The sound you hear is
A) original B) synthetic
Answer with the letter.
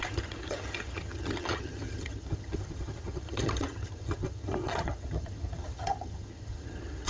B